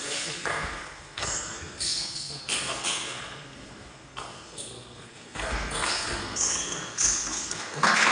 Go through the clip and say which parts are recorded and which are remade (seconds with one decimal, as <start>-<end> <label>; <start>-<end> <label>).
0.0-8.1 remade